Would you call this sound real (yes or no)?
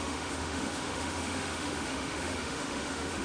no